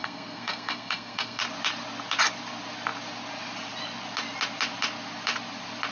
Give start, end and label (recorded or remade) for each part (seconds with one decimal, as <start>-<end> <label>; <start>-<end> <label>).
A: 0.0-1.4 remade; 1.4-5.9 recorded